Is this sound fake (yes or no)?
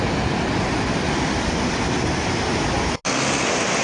no